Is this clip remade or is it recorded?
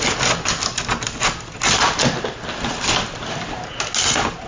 recorded